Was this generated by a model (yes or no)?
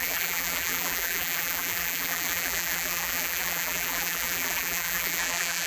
yes